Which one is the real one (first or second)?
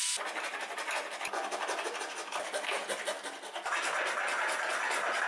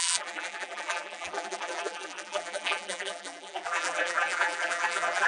first